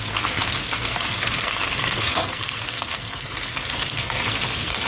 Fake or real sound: fake